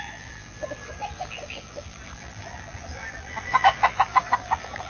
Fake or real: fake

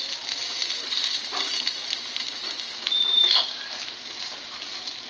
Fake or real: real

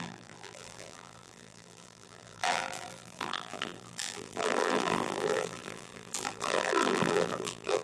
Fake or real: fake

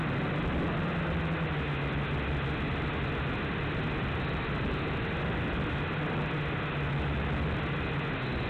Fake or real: real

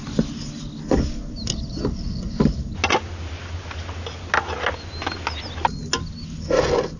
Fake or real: real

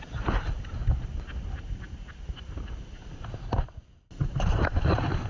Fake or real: real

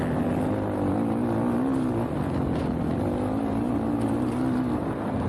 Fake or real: real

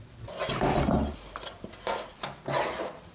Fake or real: real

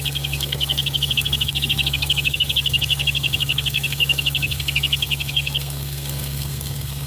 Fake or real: fake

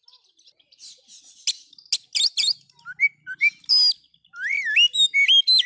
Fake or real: real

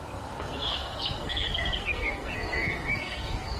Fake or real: fake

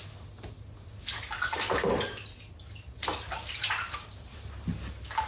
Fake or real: real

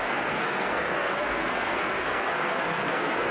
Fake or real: fake